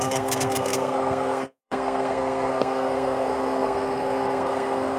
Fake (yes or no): yes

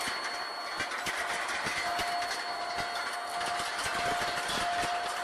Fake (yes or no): no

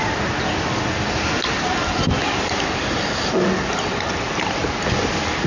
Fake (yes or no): no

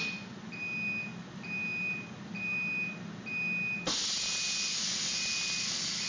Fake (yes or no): no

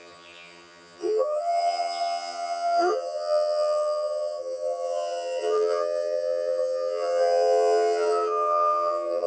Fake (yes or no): yes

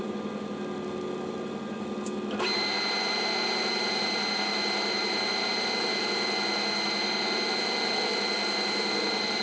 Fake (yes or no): no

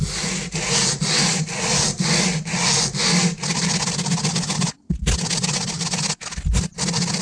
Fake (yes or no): no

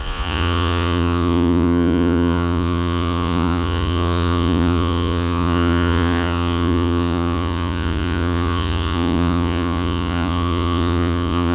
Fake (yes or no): yes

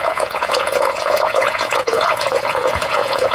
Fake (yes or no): yes